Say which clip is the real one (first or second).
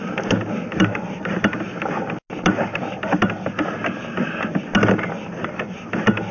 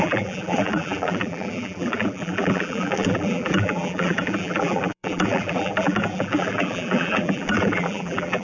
first